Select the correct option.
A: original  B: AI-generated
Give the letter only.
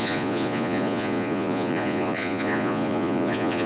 B